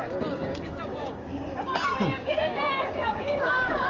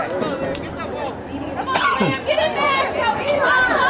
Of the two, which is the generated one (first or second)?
first